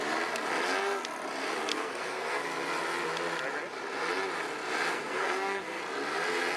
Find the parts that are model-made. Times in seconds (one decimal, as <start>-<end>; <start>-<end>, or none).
1.7-2.4; 4.9-5.8